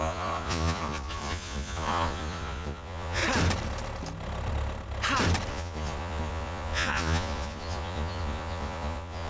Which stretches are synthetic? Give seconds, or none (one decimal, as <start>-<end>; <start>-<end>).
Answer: 0.0-3.2; 5.5-9.3